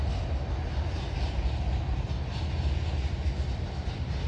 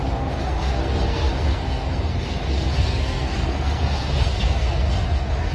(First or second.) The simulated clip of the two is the second